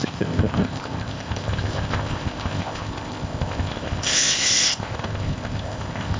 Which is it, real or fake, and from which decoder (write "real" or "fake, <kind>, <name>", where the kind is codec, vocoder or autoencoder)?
fake, codec, ZipCodec